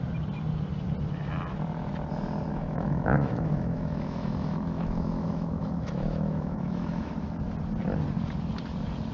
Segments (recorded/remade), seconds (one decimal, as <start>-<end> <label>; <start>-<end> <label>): 0.0-2.5 recorded; 2.5-7.1 remade; 7.1-9.1 recorded